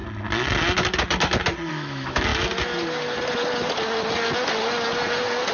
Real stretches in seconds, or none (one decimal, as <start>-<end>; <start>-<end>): 0.0-1.7; 2.3-5.5